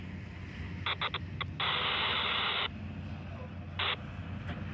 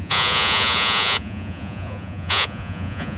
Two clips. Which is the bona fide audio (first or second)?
first